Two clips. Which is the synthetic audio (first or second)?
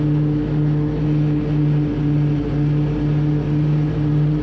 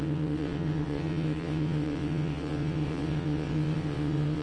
second